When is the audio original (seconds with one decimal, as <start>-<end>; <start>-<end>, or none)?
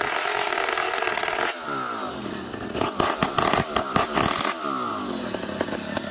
0.0-6.1